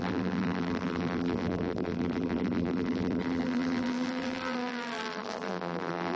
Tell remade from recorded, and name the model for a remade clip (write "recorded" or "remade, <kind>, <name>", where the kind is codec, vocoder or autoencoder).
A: remade, vocoder, BigVGAN v2